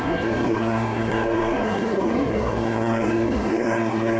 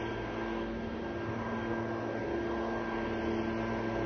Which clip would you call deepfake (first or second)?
first